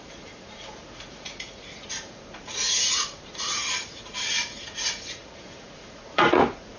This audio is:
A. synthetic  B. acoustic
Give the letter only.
A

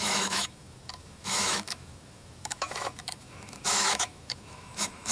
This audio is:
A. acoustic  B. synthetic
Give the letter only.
B